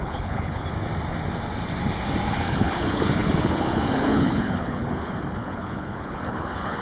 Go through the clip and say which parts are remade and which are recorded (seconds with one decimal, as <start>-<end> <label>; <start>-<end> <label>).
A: 0.0-0.6 remade; 0.6-2.3 recorded; 2.3-6.8 remade